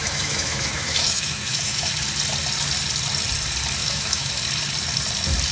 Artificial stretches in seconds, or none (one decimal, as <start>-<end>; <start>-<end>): 0.0-1.9; 3.8-4.3